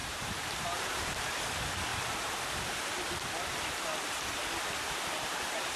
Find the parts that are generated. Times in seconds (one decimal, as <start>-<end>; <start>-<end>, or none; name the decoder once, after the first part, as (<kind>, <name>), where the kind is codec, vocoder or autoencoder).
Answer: 0.0-1.3 (vocoder, BigVGAN v2); 1.9-2.5